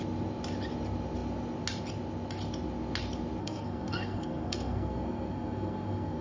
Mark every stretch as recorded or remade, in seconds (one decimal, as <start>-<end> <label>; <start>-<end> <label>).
0.0-3.4 recorded; 3.4-6.2 remade